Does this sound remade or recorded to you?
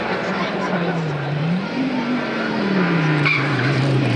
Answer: remade